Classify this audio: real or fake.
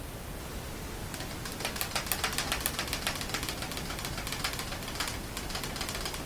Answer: real